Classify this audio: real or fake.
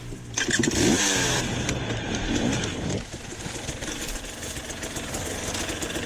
real